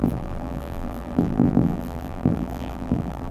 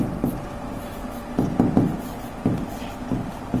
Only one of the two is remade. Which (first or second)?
first